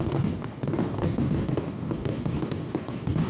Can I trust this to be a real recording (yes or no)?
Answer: no